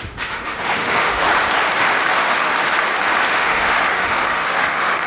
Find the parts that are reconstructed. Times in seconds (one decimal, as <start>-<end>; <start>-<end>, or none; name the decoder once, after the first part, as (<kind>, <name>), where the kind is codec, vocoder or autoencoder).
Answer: 0.0-1.3 (autoencoder, DAC-VAE); 1.8-2.5; 3.3-5.1